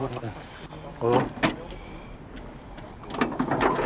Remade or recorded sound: recorded